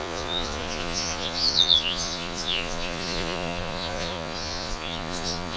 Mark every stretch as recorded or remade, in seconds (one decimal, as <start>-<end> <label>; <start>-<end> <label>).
0.0-5.6 remade